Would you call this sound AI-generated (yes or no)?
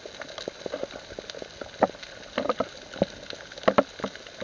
no